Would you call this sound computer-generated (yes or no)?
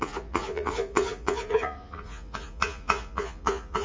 yes